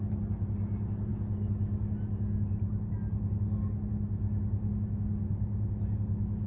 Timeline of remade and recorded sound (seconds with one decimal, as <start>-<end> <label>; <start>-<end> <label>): 0.0-6.5 recorded